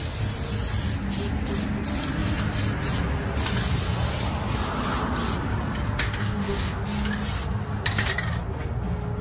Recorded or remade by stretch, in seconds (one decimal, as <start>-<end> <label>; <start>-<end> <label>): 0.0-6.0 recorded; 6.0-6.8 remade; 6.8-9.2 recorded